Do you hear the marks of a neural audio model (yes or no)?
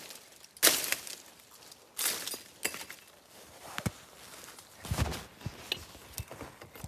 no